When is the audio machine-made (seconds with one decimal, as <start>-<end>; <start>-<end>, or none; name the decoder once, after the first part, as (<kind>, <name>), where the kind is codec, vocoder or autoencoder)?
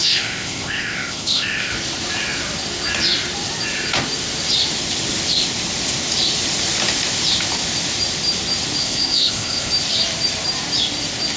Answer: 0.0-1.7 (codec, ZipCodec); 8.8-9.7